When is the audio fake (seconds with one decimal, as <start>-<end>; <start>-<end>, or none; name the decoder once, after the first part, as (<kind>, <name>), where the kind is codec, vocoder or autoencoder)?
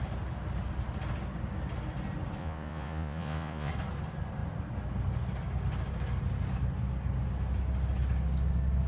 2.4-3.7 (vocoder, Vocos)